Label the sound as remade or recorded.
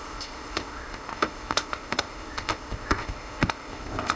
remade